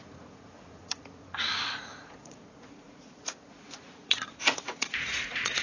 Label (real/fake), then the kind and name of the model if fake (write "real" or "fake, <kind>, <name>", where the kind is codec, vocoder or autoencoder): fake, vocoder, Vocos